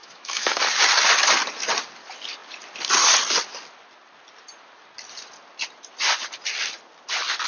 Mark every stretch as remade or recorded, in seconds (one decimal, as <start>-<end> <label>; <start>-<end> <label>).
0.0-0.6 remade; 0.6-7.5 recorded